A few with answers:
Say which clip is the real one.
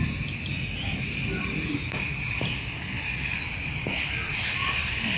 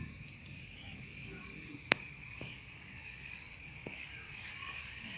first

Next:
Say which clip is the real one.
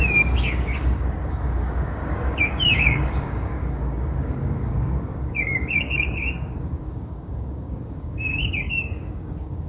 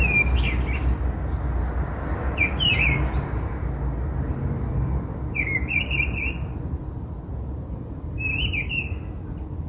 second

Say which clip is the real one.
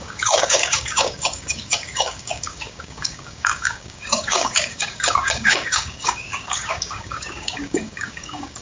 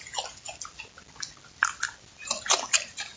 second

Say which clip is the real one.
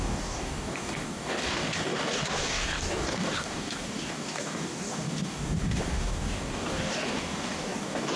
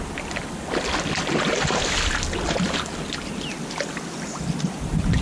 second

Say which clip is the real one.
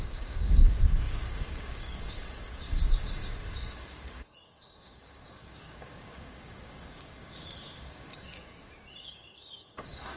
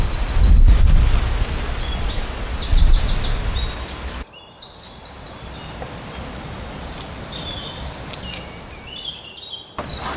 second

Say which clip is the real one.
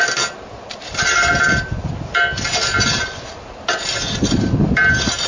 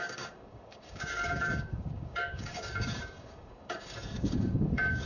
first